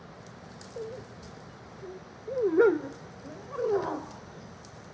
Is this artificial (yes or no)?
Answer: no